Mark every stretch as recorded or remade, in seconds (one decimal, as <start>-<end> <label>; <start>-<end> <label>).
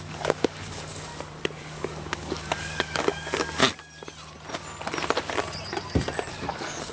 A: 0.0-1.1 remade; 1.1-1.6 recorded; 1.6-3.6 remade; 3.6-6.3 recorded; 6.3-6.9 remade